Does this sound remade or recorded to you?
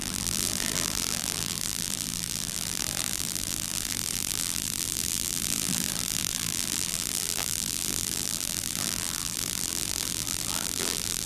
remade